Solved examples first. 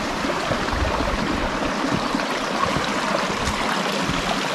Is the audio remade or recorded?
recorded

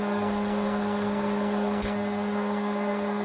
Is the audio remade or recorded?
remade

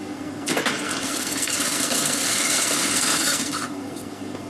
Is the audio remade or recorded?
remade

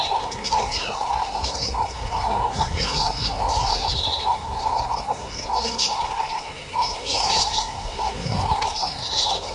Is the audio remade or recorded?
remade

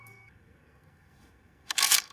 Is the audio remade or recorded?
remade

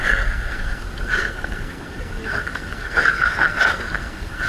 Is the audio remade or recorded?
remade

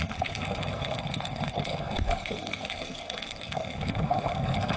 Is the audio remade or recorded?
remade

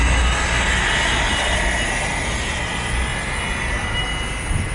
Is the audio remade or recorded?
recorded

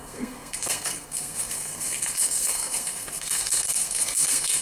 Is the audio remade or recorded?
remade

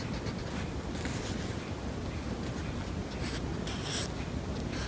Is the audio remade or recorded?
recorded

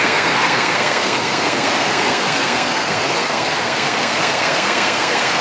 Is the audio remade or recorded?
remade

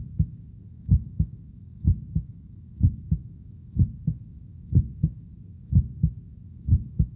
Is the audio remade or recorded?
remade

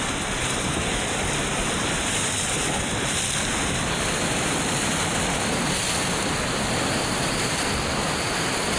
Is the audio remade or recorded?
recorded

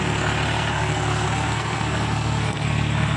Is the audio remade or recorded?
remade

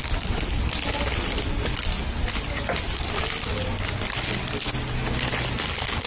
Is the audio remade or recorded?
recorded